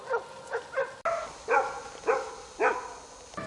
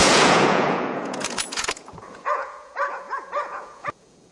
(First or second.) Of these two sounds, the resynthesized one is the second